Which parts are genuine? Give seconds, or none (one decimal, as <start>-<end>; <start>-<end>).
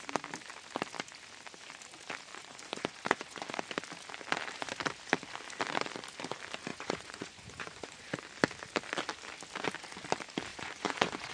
0.0-2.3; 3.4-6.7; 8.2-10.5